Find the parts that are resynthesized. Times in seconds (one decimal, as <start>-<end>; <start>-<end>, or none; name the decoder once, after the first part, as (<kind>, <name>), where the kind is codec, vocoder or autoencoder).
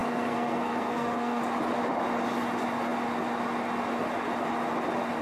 0.0-1.4 (codec, SNAC)